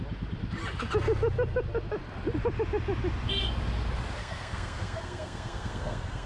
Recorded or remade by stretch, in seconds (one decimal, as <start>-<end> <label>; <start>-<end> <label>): 0.0-4.2 recorded; 4.2-6.3 remade